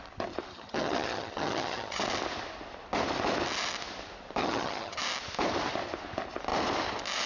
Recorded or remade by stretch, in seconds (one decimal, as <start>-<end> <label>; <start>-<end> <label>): 0.0-0.5 recorded; 0.5-2.0 remade; 2.0-4.4 recorded; 4.4-5.0 remade; 5.0-7.3 recorded